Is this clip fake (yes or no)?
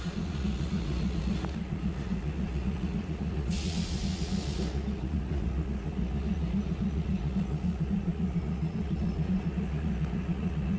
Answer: yes